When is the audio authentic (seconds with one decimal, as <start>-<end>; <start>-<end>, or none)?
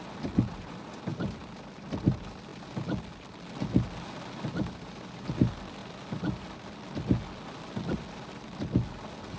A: 0.0-9.4